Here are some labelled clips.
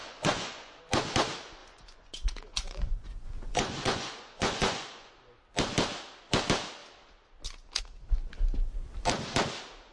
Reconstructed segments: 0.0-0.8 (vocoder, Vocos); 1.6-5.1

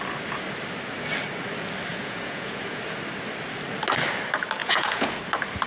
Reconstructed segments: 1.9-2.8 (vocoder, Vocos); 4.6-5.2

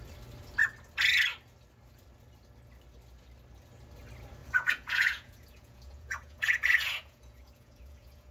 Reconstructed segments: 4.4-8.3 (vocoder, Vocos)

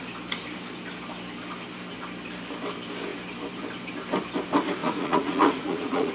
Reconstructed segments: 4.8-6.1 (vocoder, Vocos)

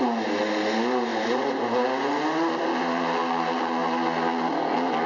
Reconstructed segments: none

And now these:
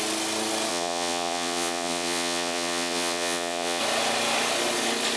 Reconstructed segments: 0.7-3.8 (vocoder, Vocos)

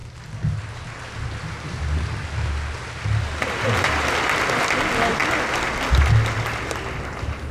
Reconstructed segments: none

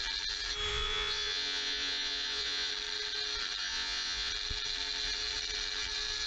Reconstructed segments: 0.7-2.7 (vocoder, Vocos); 3.6-4.3